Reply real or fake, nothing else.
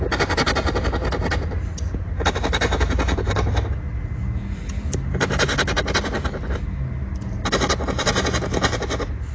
real